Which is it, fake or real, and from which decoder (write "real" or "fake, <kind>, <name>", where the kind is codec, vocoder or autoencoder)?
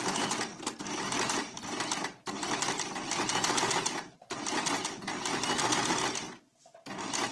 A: real